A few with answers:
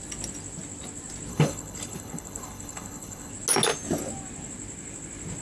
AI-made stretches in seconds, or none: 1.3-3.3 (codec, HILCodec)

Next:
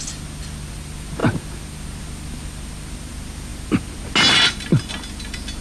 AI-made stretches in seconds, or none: none